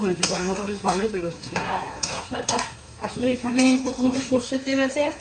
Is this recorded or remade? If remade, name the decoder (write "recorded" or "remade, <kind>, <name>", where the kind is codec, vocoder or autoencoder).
remade, codec, SNAC